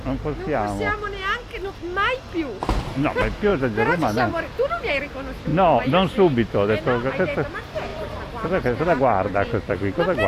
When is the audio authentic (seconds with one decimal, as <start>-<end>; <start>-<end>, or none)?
0.0-5.5; 7.1-7.9